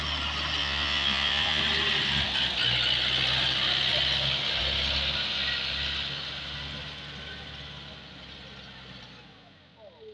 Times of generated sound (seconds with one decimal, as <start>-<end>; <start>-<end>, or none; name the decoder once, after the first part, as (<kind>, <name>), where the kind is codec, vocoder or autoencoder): 0.6-1.6 (vocoder, Vocos)

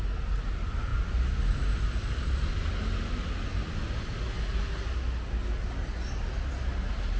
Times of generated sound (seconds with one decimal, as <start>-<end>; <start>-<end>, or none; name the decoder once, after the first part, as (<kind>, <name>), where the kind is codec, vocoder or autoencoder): none

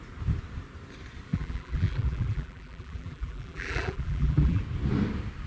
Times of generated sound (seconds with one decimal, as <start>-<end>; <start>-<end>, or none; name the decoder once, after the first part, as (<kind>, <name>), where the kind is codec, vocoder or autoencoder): 1.3-4.6 (vocoder, BigVGAN v2)

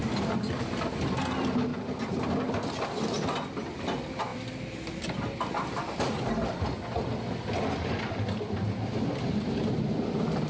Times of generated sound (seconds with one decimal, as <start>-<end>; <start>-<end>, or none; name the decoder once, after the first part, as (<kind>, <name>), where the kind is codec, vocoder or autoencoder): 0.0-0.7 (vocoder, BigVGAN v2); 4.3-5.5

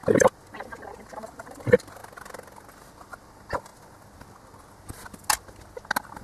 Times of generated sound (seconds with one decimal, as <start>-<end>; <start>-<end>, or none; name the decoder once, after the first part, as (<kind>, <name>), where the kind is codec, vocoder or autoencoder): 1.0-2.0 (vocoder, BigVGAN v2); 2.7-3.7